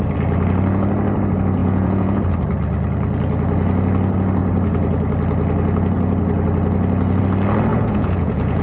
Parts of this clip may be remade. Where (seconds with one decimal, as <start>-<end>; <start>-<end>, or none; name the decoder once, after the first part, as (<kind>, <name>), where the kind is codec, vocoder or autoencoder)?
1.6-2.2 (vocoder, Vocos); 7.7-8.6